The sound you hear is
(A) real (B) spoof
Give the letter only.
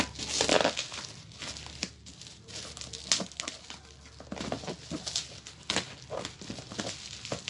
A